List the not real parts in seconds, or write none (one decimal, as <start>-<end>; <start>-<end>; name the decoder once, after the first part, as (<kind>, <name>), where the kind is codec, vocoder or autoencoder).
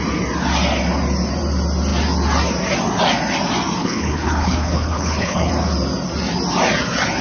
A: 3.8-5.5 (codec, HILCodec)